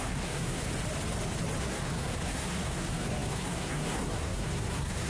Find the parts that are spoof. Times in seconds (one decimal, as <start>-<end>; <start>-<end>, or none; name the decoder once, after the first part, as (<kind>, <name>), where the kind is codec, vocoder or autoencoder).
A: 0.0-0.7 (codec, SNAC); 1.6-5.1